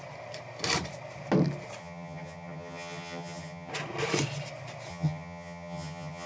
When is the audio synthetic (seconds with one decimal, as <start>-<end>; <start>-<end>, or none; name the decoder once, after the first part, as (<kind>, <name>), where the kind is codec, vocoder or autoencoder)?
1.8-3.7 (vocoder, HiFi-GAN); 4.9-6.3